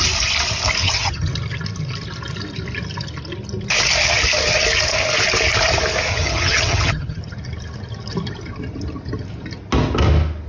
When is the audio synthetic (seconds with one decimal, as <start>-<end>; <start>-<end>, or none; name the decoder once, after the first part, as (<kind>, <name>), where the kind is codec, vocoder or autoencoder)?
0.8-1.3 (vocoder, HiFi-GAN); 6.1-7.2

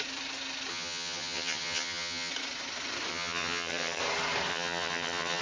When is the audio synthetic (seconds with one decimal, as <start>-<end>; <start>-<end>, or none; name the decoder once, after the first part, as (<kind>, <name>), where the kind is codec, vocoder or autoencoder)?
0.7-2.3 (vocoder, HiFi-GAN); 3.1-4.0; 4.5-5.4

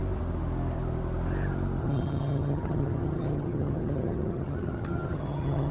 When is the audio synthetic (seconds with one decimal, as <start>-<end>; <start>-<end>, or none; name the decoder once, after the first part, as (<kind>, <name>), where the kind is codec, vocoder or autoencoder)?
1.8-5.7 (vocoder, HiFi-GAN)

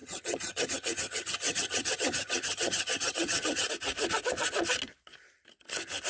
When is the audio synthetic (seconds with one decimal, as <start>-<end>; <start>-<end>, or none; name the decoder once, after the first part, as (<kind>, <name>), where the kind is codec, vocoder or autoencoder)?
0.0-3.7 (vocoder, HiFi-GAN)

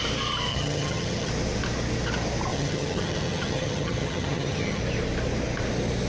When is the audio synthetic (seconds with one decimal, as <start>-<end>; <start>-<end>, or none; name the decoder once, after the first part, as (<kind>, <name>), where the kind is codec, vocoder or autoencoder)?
0.5-1.3 (vocoder, HiFi-GAN); 2.5-4.8

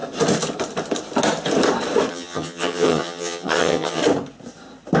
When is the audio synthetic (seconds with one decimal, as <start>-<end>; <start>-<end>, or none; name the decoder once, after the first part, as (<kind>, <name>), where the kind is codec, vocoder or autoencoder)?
2.1-4.0 (vocoder, HiFi-GAN)

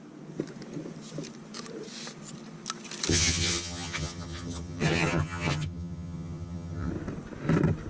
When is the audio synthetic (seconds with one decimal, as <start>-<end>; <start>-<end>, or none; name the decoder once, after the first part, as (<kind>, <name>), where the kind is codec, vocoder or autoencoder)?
3.1-6.9 (vocoder, HiFi-GAN)